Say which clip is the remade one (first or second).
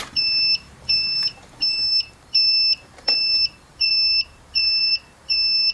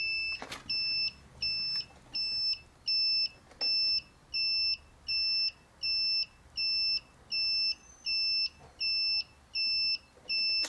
first